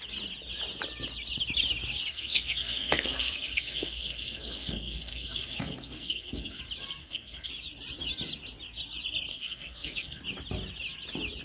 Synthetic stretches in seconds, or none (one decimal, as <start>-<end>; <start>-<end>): 2.1-6.6; 7.0-7.5; 9.3-10.2